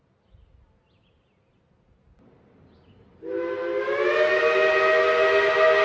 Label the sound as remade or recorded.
recorded